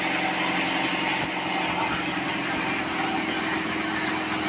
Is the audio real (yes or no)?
yes